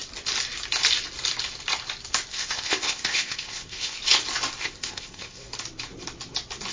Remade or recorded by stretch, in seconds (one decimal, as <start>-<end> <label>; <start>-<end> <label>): 0.0-2.3 recorded; 2.3-4.0 remade; 4.0-4.6 recorded; 4.6-5.4 remade; 5.4-6.7 recorded